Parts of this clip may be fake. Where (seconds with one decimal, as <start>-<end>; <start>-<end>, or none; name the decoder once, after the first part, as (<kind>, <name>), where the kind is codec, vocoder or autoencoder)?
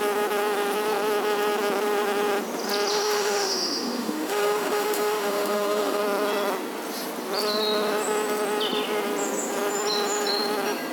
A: 2.9-6.0 (autoencoder, DAC-VAE)